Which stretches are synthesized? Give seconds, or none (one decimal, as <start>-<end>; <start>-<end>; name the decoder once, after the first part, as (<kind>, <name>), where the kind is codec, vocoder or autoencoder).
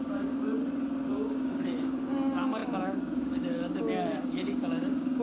0.0-0.6 (codec, DAC); 1.1-5.2